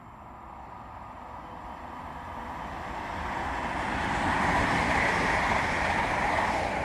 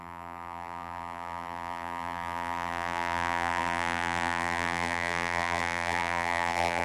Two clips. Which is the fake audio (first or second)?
second